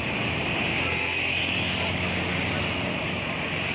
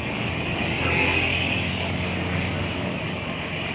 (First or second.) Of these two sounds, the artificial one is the second